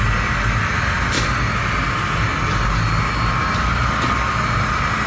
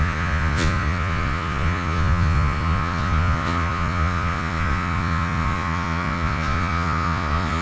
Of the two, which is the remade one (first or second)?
second